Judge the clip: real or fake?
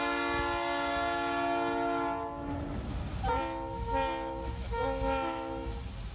real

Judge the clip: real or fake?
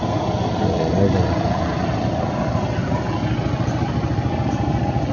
real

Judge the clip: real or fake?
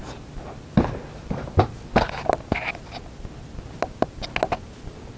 real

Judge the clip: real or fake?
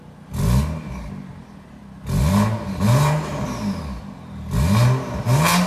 real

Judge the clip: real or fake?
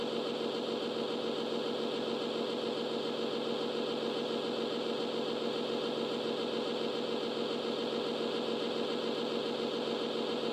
real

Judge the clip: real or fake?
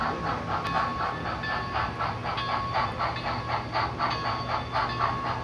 real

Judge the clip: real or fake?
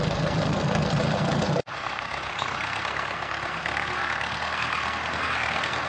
fake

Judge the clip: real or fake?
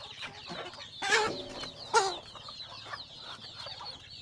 real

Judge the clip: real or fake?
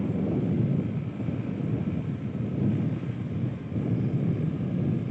real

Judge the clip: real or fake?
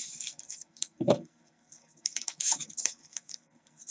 fake